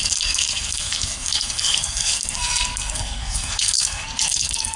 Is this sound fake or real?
fake